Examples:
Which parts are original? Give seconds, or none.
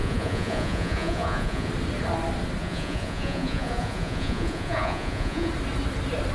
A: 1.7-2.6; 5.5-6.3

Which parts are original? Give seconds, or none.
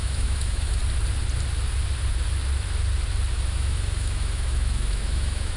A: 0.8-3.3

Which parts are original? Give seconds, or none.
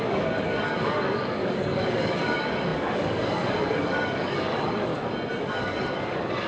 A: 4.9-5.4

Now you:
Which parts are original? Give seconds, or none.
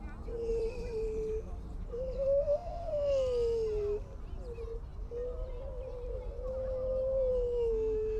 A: 0.0-0.5; 2.1-8.2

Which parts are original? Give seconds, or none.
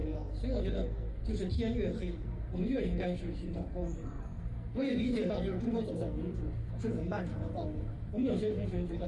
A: 1.3-2.0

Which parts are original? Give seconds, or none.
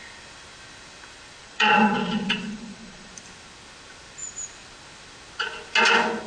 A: 0.0-1.4; 3.1-6.3